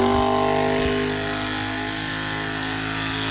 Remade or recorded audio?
recorded